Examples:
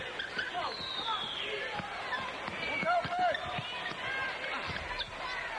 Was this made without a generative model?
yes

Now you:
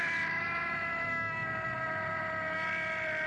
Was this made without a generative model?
yes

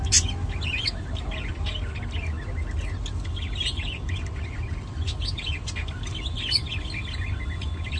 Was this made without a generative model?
yes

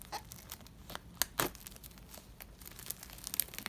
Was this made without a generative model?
yes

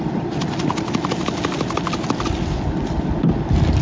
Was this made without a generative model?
yes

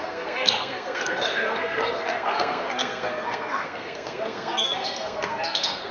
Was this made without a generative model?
no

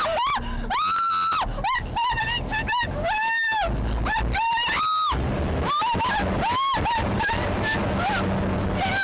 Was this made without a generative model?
yes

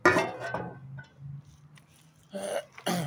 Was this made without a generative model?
yes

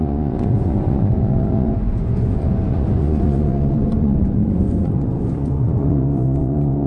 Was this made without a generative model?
no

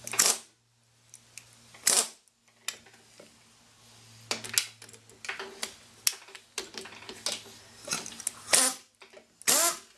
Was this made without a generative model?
yes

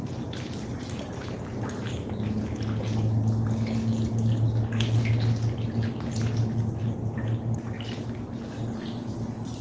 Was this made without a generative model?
yes